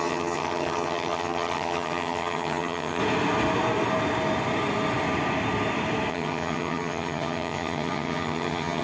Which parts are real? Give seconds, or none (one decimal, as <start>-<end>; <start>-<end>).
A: 3.0-6.1